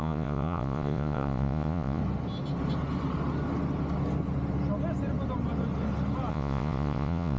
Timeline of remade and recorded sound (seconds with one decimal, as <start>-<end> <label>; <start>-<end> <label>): 0.0-2.0 remade; 2.0-6.3 recorded; 6.3-7.4 remade